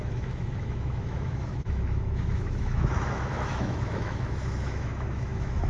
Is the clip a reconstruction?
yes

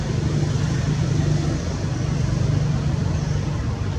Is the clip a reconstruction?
no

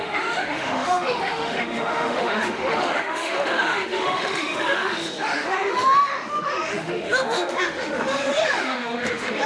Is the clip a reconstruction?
yes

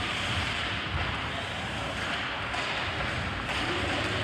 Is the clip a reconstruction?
no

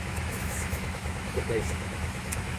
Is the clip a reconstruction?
yes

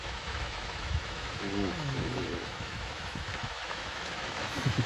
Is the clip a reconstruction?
yes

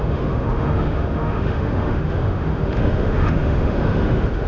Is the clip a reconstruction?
yes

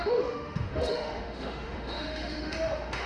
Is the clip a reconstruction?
yes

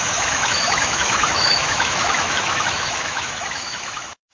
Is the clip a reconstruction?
yes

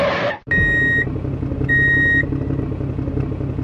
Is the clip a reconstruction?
no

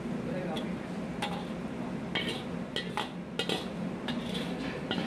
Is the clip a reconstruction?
no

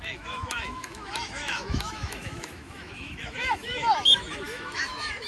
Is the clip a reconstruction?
yes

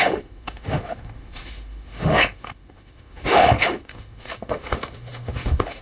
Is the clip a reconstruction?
yes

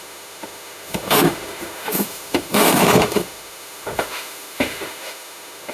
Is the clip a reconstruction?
yes